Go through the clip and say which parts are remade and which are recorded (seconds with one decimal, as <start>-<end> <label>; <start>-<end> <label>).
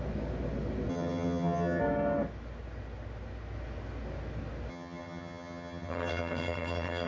0.0-0.9 recorded; 0.9-1.8 remade; 1.8-4.7 recorded; 4.7-7.1 remade